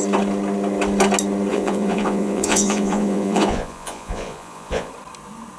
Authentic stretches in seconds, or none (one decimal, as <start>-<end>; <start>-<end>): 0.0-1.5; 4.9-5.6